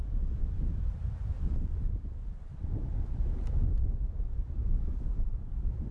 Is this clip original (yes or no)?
yes